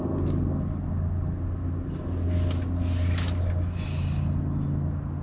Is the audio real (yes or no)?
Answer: yes